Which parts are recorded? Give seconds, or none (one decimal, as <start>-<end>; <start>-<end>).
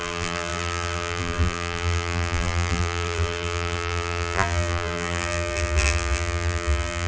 none